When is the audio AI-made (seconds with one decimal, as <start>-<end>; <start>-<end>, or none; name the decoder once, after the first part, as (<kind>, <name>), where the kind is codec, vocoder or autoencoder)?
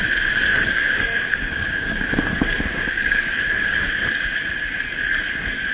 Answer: 0.5-3.9 (codec, DAC)